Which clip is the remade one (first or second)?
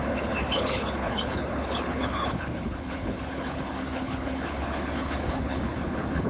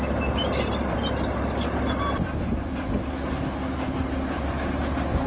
first